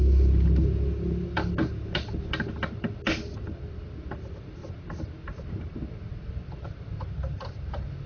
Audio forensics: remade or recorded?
recorded